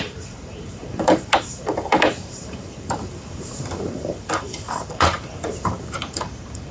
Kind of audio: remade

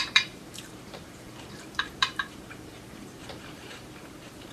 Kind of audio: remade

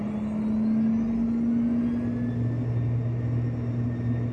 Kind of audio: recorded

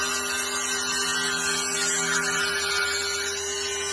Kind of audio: recorded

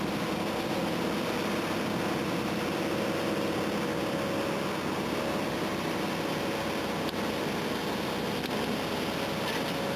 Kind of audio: recorded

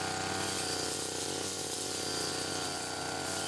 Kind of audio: remade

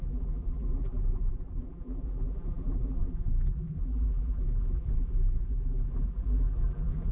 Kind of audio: remade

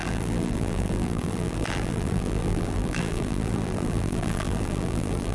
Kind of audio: remade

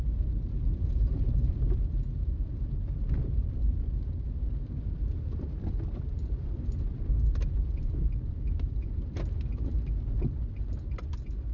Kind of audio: remade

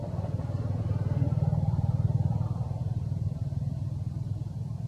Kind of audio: recorded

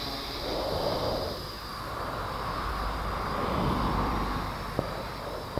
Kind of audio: remade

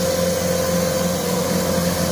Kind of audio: recorded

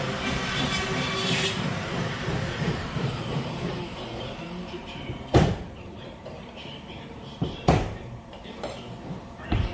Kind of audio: remade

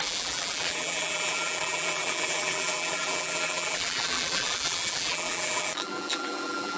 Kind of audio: remade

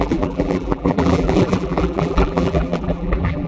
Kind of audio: remade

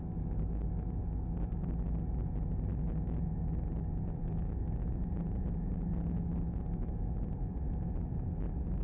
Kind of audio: recorded